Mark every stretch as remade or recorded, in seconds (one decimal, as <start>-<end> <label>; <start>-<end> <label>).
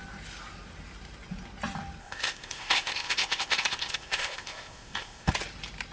0.0-2.0 recorded; 2.0-5.3 remade; 5.3-5.9 recorded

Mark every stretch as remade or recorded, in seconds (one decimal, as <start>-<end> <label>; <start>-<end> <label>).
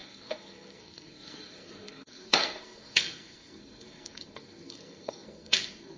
0.0-6.0 remade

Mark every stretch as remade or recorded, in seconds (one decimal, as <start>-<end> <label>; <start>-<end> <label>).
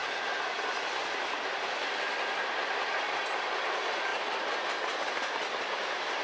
0.0-4.1 remade; 4.1-5.1 recorded; 5.1-6.2 remade